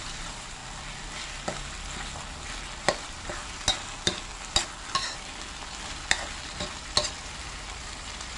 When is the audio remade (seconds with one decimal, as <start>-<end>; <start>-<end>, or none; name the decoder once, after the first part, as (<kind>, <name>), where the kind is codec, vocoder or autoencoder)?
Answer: 0.0-0.6 (vocoder, BigVGAN v2); 2.8-3.4; 7.2-8.4